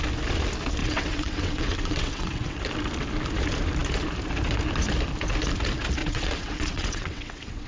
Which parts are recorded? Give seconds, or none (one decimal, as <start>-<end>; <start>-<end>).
0.0-0.8; 2.6-6.0